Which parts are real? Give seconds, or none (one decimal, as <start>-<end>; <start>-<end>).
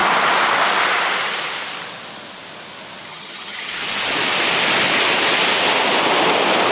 0.0-3.1; 3.7-6.7